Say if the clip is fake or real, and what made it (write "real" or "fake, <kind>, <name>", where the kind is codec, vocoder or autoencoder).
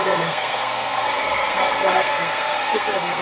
fake, codec, SNAC